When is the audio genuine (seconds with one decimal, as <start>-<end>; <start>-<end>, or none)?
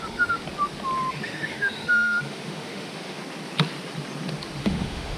0.4-1.1; 3.2-4.6